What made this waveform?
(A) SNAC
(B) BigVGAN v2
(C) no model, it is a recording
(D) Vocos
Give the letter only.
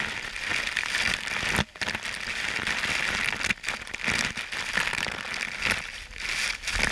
C